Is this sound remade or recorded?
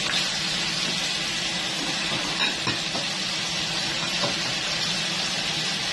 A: recorded